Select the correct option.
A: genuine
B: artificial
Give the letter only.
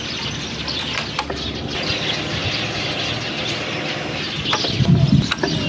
A